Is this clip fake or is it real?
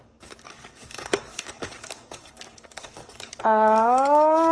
fake